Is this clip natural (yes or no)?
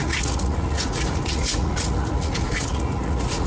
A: no